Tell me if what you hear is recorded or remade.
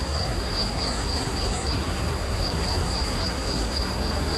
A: remade